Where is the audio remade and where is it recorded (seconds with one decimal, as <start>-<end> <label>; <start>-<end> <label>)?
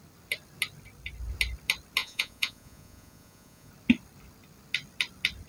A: 0.0-2.0 recorded; 2.0-3.7 remade; 3.7-5.5 recorded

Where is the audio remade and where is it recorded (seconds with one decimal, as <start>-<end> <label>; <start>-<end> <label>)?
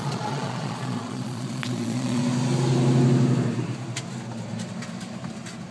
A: 0.0-2.2 remade; 2.2-5.7 recorded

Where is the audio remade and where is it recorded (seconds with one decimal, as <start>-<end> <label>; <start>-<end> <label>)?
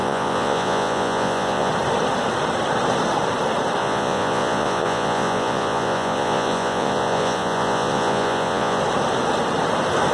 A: 0.0-1.7 remade; 1.7-3.8 recorded; 3.8-8.8 remade; 8.8-10.1 recorded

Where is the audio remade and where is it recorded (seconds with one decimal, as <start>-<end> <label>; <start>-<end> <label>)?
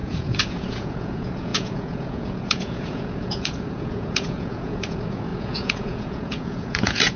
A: 0.0-7.2 remade